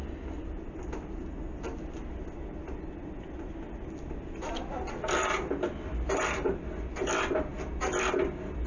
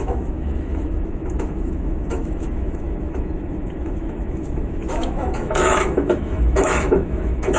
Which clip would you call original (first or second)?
first